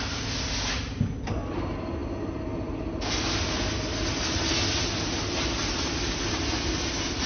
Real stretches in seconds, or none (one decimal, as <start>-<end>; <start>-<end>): 0.0-7.3